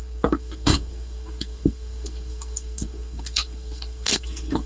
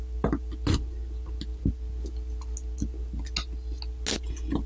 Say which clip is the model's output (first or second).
first